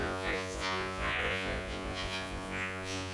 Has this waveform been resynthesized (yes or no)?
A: yes